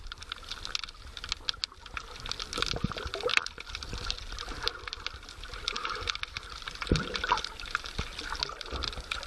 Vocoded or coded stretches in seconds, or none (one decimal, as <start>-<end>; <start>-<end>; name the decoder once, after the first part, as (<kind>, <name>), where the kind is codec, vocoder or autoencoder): none